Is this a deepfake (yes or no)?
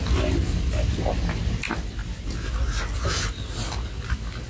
no